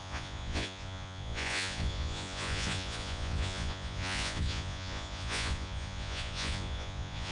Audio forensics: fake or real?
fake